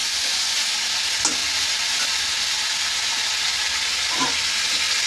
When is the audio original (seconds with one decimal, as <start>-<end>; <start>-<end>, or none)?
0.7-5.1